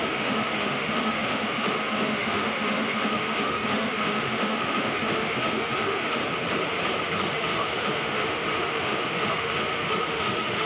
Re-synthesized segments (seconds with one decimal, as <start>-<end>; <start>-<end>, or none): 0.0-6.2; 7.3-10.7